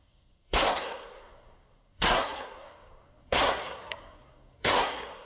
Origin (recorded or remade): remade